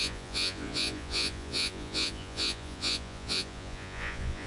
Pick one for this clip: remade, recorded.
remade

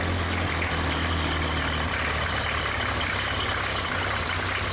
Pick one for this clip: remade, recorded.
recorded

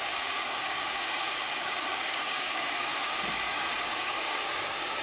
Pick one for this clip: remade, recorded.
remade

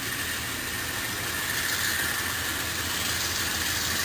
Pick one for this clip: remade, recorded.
recorded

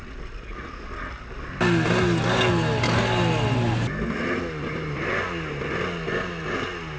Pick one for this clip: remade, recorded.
recorded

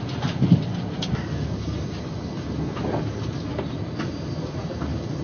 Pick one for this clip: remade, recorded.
recorded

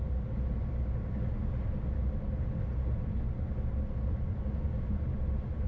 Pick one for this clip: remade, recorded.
recorded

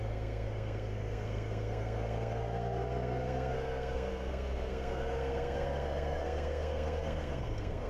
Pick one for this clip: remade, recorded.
remade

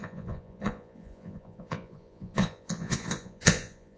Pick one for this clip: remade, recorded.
remade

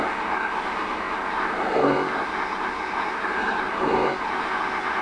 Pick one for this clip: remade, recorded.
remade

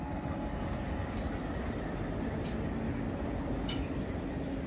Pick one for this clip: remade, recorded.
recorded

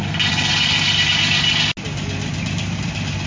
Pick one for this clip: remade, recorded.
recorded